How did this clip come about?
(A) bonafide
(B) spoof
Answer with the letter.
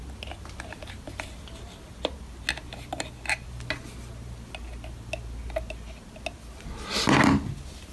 A